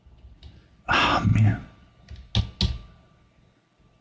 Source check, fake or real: real